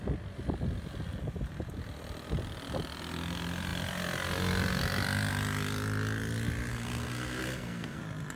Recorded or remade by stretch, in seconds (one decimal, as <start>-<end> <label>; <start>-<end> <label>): 0.0-6.7 recorded; 6.7-8.0 remade; 8.0-8.4 recorded